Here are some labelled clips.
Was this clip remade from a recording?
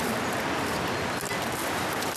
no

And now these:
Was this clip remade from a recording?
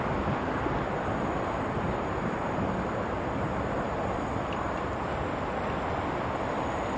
no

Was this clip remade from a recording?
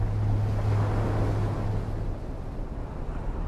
no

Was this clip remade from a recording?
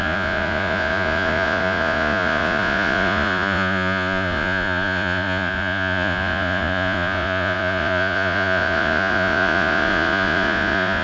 yes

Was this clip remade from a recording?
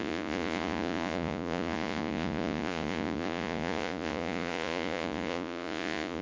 yes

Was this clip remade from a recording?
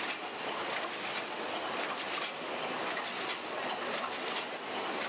no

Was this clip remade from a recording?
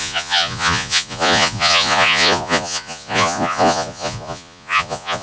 yes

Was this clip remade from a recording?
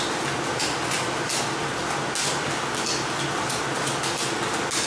no